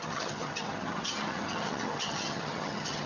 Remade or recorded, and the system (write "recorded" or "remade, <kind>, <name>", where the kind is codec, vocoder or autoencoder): remade, vocoder, HiFi-GAN